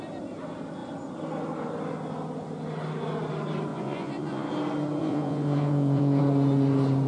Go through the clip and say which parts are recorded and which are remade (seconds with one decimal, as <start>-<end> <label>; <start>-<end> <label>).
0.0-3.7 recorded; 3.7-4.5 remade; 4.5-5.0 recorded; 5.0-6.2 remade; 6.2-7.1 recorded